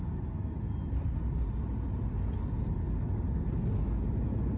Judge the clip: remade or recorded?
recorded